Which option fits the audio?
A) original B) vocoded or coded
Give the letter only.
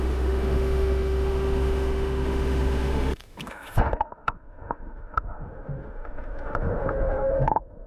B